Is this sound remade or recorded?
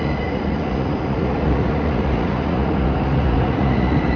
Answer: remade